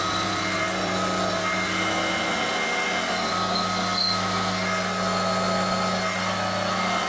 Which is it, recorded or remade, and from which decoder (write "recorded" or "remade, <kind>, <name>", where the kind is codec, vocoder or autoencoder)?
recorded